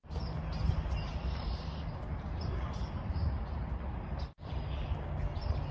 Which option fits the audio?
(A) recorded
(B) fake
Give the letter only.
A